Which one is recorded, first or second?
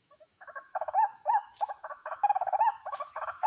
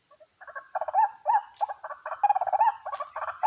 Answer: second